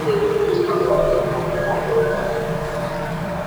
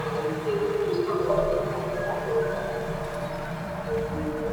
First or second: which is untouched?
second